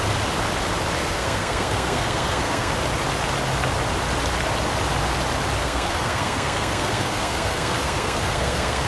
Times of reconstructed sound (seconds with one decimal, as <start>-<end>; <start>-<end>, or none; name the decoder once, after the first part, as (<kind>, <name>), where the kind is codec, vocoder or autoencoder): 1.0-2.7 (codec, SNAC); 5.6-8.9